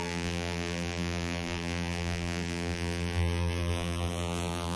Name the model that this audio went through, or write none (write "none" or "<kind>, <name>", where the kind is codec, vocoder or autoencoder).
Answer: vocoder, BigVGAN v2